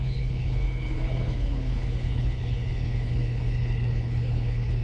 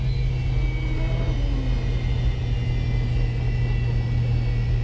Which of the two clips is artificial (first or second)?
first